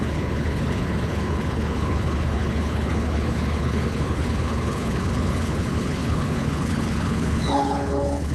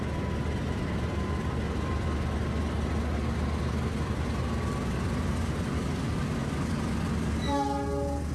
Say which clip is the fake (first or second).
first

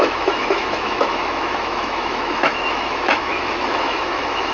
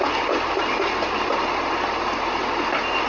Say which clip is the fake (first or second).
first